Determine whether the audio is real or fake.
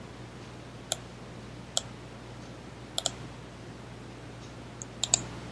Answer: real